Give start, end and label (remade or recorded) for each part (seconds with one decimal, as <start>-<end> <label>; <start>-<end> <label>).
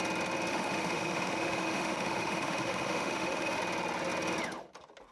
0.0-0.5 recorded; 0.5-3.6 remade; 3.6-5.1 recorded